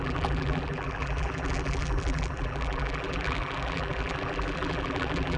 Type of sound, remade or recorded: remade